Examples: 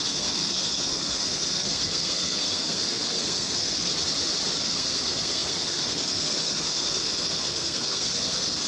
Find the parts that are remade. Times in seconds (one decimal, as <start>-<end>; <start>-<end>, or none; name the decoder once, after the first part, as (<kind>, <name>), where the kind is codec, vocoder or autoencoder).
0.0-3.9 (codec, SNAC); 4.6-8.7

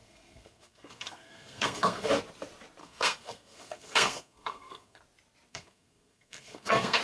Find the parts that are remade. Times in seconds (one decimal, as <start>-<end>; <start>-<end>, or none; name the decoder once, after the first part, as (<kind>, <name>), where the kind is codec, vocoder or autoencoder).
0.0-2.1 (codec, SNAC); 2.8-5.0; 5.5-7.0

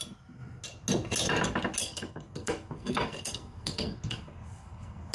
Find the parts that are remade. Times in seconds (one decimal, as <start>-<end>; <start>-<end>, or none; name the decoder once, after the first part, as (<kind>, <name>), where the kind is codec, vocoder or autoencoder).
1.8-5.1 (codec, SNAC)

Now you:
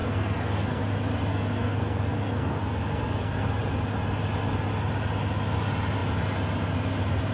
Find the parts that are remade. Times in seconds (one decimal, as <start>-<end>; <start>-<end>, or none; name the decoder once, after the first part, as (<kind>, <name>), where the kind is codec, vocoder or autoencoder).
0.0-0.8 (codec, SNAC); 1.3-3.6

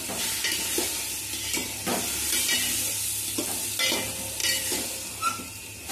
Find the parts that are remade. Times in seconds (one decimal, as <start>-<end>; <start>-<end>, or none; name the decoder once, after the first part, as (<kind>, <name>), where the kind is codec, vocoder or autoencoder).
none

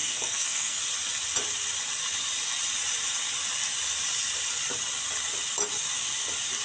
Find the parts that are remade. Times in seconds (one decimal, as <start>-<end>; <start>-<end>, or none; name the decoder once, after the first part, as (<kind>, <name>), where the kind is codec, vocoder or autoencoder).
0.0-0.8 (codec, SNAC)

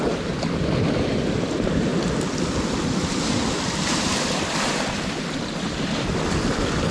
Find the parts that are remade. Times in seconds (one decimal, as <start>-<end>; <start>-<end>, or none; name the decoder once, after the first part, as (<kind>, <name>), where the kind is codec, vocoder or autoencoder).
none